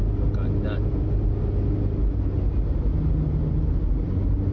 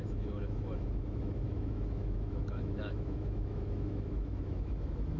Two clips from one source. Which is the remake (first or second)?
second